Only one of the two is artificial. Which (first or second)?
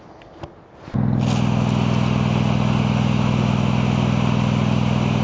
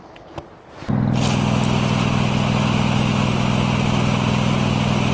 second